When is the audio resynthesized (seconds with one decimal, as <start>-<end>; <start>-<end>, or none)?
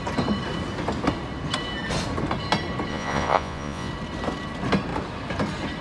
2.9-3.9